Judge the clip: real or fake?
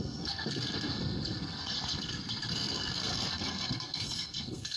fake